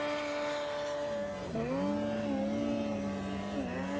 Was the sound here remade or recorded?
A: recorded